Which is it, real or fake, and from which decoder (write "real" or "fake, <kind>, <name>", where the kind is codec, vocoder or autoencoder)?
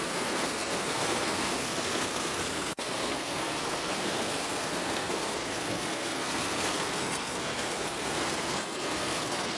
fake, codec, SNAC